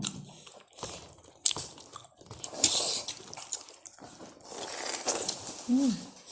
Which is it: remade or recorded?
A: remade